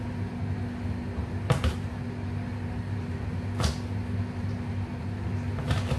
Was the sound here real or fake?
real